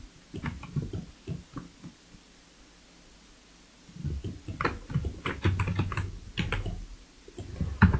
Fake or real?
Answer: real